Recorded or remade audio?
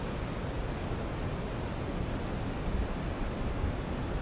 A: recorded